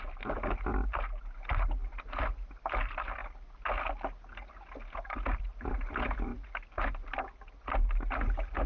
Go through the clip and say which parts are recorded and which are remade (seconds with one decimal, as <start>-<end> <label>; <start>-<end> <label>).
0.0-8.7 recorded